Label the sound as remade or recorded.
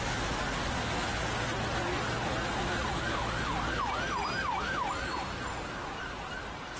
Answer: recorded